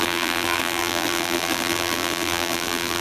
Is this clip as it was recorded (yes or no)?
no